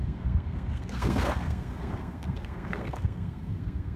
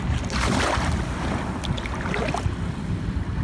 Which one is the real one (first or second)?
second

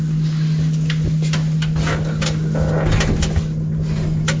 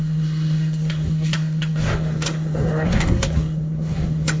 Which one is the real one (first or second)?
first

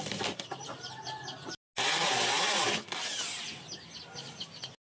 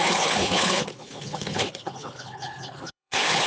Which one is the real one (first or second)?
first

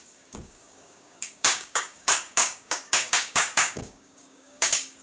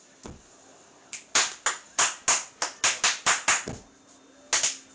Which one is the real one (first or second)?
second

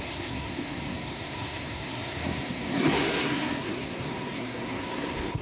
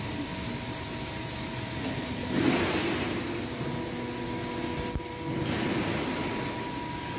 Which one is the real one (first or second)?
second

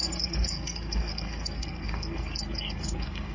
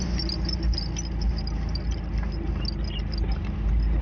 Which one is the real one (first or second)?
second